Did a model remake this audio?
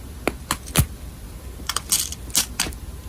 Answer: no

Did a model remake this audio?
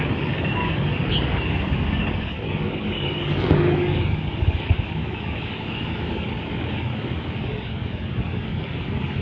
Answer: yes